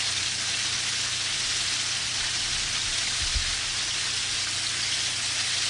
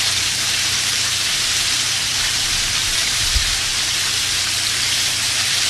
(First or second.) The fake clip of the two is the second